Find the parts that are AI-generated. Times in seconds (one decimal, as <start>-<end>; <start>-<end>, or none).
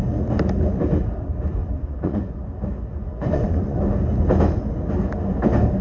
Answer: 1.6-2.4; 2.9-3.8